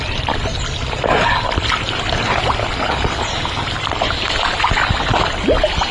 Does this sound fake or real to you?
real